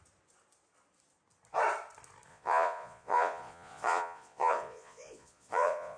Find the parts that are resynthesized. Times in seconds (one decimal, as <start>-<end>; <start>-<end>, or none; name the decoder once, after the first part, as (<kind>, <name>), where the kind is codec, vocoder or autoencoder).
2.3-6.0 (vocoder, Vocos)